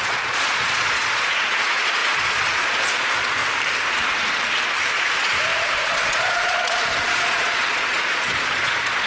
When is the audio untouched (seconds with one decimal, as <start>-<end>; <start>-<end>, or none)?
3.4-4.9